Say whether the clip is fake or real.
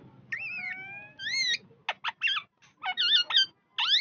real